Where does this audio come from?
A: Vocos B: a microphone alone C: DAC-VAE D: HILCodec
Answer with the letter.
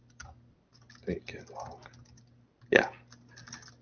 B